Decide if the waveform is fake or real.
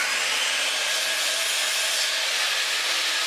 real